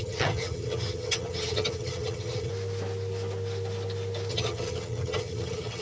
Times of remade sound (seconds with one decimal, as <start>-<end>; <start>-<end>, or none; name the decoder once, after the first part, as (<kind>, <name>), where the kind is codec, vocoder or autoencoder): 0.0-2.5 (vocoder, HiFi-GAN); 4.3-5.8